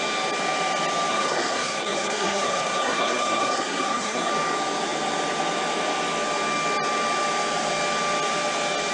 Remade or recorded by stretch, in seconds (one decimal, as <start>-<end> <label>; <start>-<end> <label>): 0.0-1.1 recorded; 1.1-4.3 remade; 4.3-8.9 recorded